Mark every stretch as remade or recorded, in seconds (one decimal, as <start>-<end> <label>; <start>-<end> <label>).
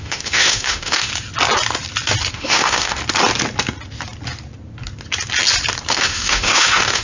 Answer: 0.0-1.1 remade; 1.1-2.3 recorded; 2.3-3.0 remade; 3.0-5.9 recorded; 5.9-7.0 remade